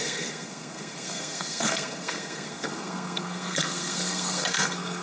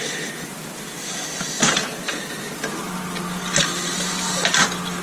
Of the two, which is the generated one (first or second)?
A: first